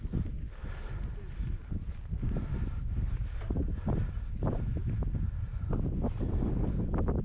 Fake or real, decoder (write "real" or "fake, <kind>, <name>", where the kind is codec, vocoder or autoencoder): real